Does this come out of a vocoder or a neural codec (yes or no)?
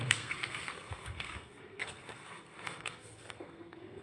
yes